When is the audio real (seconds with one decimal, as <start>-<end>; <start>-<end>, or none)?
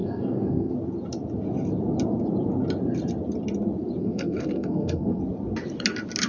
0.7-4.0; 5.2-6.3